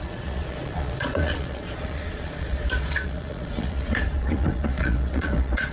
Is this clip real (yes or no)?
no